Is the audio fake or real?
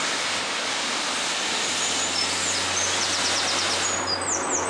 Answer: real